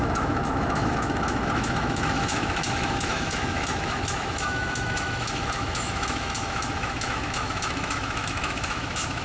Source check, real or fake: fake